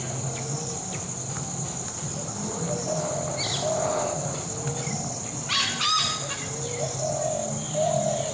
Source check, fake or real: real